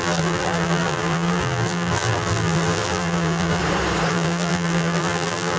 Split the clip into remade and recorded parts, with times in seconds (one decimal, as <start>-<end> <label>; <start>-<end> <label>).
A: 0.0-3.6 remade; 3.6-4.1 recorded; 4.1-5.6 remade